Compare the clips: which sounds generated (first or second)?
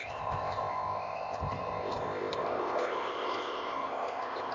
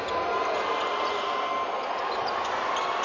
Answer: first